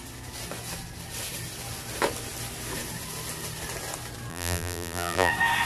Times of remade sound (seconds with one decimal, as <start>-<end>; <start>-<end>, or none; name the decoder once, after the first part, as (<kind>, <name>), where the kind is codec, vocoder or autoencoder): 4.3-5.3 (vocoder, BigVGAN v2)